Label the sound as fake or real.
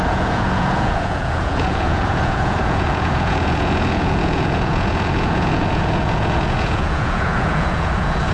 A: fake